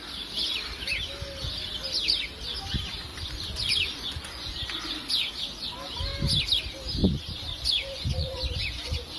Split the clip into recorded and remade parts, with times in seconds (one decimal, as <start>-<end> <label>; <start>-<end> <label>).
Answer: 0.0-3.1 recorded; 3.1-5.3 remade; 5.3-7.0 recorded; 7.0-9.2 remade